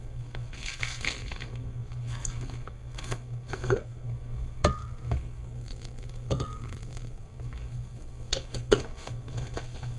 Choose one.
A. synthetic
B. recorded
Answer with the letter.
A